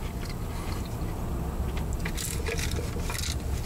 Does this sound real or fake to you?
real